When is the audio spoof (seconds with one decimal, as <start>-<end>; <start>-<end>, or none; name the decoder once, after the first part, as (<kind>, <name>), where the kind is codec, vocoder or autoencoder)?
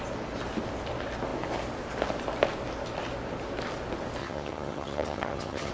4.2-5.7 (vocoder, HiFi-GAN)